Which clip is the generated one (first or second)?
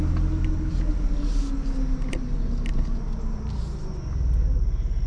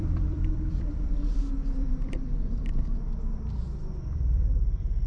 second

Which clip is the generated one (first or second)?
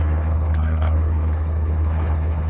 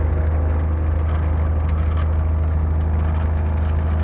first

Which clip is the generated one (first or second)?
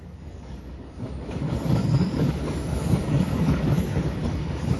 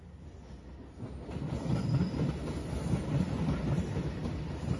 first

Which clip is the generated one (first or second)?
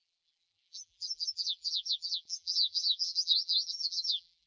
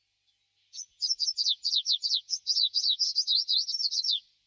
first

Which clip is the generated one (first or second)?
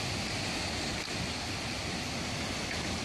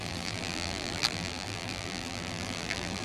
second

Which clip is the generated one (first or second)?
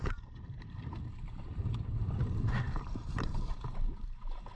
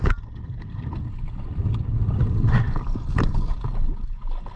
first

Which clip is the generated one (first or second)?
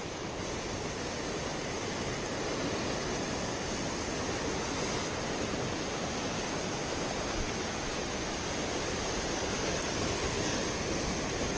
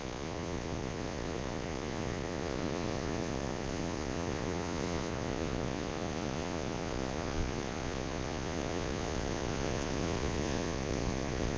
second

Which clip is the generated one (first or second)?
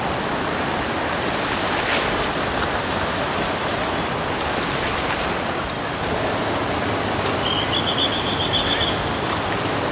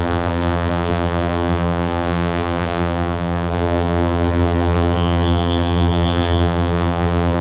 second